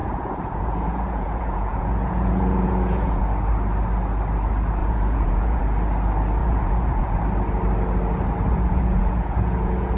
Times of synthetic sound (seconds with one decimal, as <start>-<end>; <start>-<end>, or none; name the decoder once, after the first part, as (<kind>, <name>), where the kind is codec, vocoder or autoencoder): 0.0-3.2 (vocoder, Vocos); 4.8-5.6; 6.4-7.2; 8.5-10.0